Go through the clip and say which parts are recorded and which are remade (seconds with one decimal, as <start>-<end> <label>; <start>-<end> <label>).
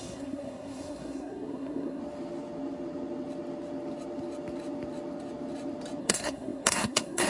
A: 0.0-2.0 remade; 2.0-6.0 recorded; 6.0-7.3 remade